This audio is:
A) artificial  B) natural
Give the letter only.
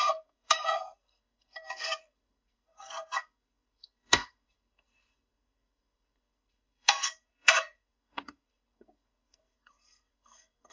A